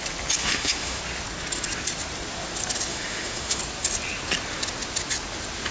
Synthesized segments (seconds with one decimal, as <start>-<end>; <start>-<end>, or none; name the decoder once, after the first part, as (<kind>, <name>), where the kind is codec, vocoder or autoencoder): 0.4-1.0 (autoencoder, DAC-VAE); 2.9-3.6